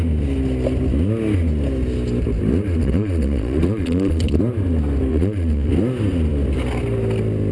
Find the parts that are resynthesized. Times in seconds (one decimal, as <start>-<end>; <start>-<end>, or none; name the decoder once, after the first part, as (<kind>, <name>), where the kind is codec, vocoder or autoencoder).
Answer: 2.8-4.4 (vocoder, Vocos); 5.1-5.7